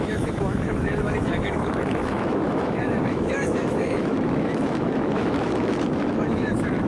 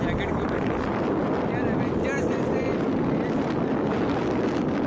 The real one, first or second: second